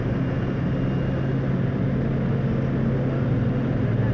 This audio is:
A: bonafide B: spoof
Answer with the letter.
A